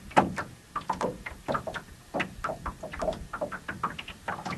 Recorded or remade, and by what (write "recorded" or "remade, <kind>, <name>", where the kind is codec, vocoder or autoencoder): recorded